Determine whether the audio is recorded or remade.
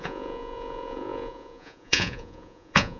remade